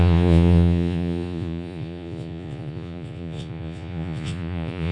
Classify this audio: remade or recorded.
remade